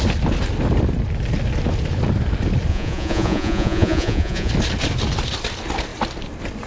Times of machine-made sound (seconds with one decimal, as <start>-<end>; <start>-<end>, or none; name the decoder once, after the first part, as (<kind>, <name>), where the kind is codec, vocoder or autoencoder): 2.7-4.5 (vocoder, Vocos)